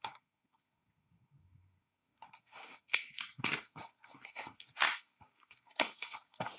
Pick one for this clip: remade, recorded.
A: remade